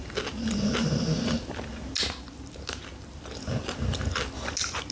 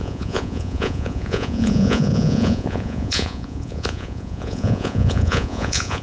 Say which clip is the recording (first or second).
first